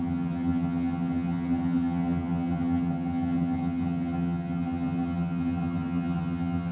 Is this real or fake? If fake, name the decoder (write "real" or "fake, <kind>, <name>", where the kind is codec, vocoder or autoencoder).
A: fake, vocoder, HiFi-GAN